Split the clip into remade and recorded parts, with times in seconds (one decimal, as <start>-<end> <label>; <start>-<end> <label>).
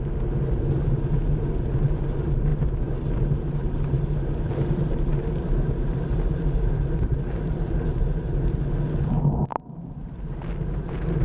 0.0-11.2 recorded